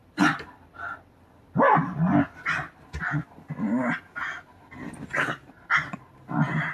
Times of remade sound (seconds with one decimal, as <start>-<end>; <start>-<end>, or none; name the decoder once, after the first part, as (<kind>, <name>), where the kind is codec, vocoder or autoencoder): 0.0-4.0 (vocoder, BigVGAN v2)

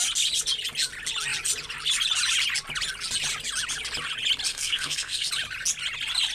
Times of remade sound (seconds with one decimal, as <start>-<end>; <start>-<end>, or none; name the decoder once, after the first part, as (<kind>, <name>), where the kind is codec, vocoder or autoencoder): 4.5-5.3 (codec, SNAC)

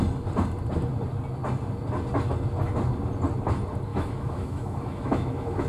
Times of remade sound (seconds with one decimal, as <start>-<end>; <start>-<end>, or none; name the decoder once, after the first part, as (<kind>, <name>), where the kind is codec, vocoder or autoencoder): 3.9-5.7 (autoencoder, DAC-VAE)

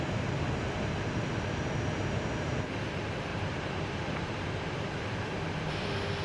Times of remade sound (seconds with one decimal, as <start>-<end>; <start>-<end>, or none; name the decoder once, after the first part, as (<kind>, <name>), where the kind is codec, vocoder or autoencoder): 3.3-4.8 (vocoder, BigVGAN v2)